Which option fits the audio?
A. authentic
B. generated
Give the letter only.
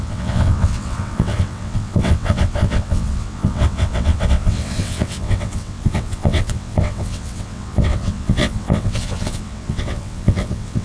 B